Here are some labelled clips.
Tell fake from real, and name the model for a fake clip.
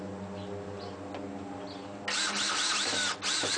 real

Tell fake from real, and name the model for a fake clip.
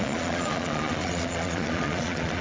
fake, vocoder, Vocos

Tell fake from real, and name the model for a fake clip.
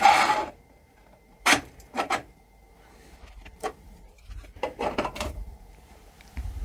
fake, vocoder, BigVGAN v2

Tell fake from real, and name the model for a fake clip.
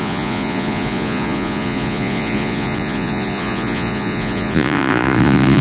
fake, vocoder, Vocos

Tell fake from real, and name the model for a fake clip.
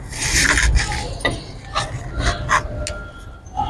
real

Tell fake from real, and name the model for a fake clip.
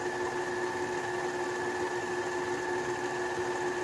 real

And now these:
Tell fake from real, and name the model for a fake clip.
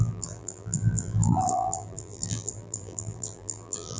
fake, vocoder, BigVGAN v2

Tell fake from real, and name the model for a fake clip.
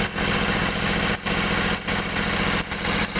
real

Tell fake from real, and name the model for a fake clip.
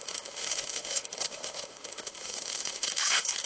fake, autoencoder, DAC-VAE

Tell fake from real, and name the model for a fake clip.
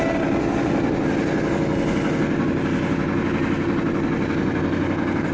real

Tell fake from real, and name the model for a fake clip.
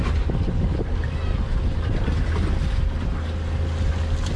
real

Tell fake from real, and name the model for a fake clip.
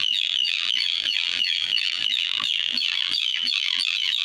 fake, vocoder, BigVGAN v2